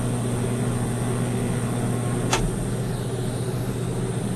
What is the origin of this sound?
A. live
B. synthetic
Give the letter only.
A